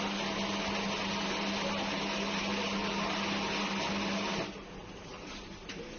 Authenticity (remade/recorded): recorded